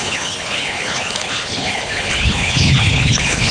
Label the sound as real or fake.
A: fake